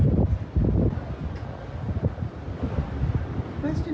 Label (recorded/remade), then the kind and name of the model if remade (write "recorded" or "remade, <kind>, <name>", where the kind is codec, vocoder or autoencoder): recorded